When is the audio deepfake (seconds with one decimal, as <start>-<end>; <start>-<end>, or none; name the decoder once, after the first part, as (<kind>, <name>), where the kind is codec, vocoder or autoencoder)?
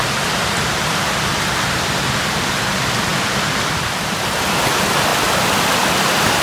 none